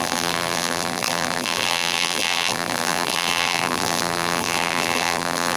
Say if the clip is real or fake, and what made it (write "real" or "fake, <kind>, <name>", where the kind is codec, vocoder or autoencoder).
fake, vocoder, BigVGAN v2